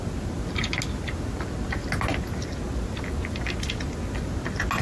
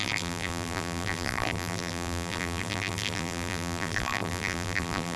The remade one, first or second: second